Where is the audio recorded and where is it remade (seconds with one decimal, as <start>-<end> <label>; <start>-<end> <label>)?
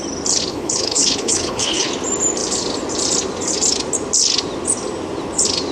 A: 0.0-0.5 recorded; 0.5-1.9 remade; 1.9-5.7 recorded